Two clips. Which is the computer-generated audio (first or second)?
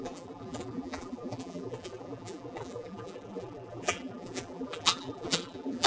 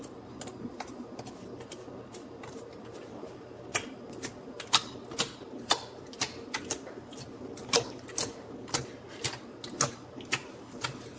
first